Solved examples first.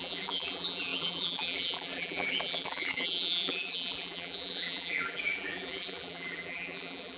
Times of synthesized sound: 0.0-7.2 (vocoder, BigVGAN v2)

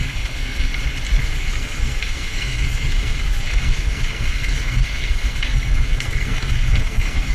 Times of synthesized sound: 0.0-0.7 (codec, SNAC); 1.2-7.3

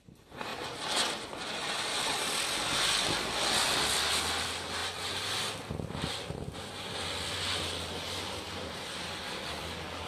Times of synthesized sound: 0.0-0.5 (vocoder, BigVGAN v2); 1.8-10.1

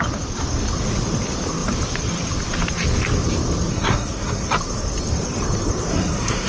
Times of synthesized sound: 3.7-4.5 (codec, SNAC); 5.9-6.5

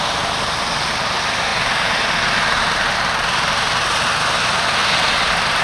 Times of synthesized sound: none

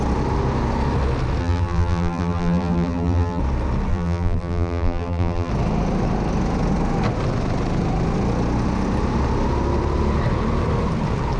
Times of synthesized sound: 1.4-3.4 (vocoder, BigVGAN v2); 3.9-5.5